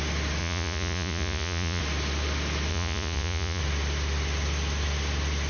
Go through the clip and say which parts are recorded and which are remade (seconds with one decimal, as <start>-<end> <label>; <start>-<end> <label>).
0.0-0.4 recorded; 0.4-1.8 remade; 1.8-2.7 recorded; 2.7-3.6 remade; 3.6-5.5 recorded